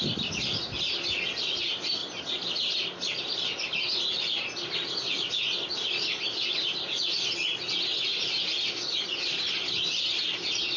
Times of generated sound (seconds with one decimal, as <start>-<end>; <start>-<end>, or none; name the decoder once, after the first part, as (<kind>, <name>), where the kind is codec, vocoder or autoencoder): none